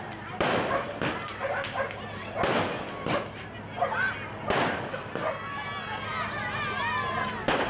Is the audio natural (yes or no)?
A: yes